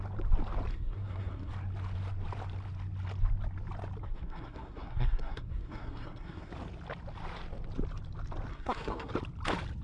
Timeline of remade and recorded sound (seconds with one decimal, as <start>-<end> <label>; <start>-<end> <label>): 0.0-0.7 recorded; 0.7-1.5 remade; 1.5-4.0 recorded; 4.0-6.5 remade; 6.5-8.5 recorded; 8.5-9.1 remade; 9.1-9.8 recorded